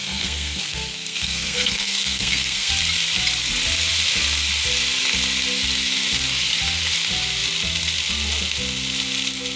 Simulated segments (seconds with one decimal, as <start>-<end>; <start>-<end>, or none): 0.0-2.7